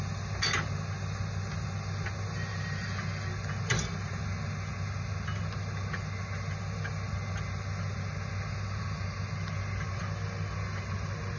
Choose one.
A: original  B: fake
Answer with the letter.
A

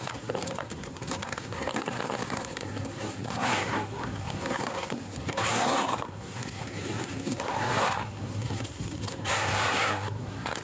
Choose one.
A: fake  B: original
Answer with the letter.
A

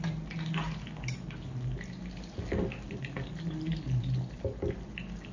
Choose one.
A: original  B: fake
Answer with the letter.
A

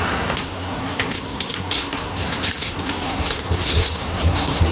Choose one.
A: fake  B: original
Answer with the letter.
A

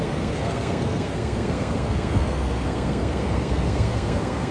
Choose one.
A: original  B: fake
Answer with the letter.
B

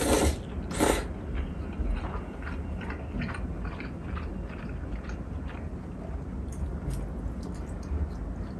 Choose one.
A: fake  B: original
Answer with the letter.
B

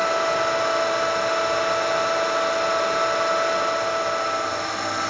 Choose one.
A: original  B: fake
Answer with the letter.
A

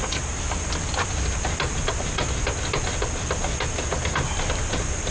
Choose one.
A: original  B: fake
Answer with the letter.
A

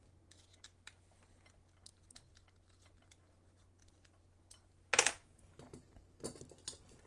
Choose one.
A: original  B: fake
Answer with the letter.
A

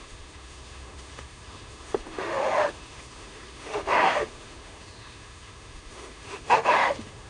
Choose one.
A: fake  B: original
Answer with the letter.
A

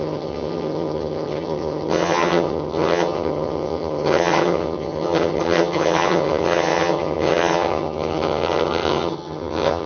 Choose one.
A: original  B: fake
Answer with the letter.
B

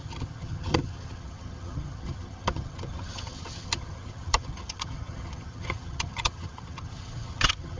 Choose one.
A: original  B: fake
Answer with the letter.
B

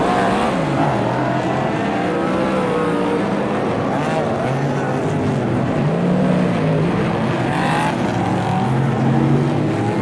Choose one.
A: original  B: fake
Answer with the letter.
A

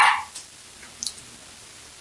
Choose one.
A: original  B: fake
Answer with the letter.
A